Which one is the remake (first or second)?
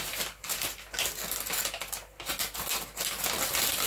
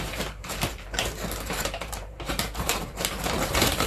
second